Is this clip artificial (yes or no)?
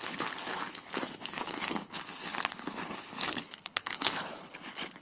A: yes